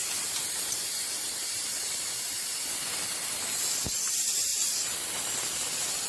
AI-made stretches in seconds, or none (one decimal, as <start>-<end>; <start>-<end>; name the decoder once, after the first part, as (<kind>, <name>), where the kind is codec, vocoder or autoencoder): 0.0-1.8 (vocoder, BigVGAN v2)